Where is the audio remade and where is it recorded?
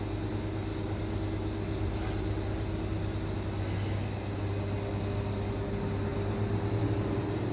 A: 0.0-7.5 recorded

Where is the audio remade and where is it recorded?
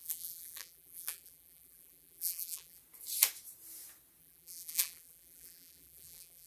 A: 0.0-2.8 remade; 2.8-4.2 recorded; 4.2-6.5 remade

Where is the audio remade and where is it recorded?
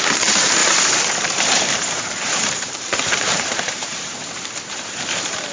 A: 0.0-0.6 remade; 0.6-1.4 recorded; 1.4-5.5 remade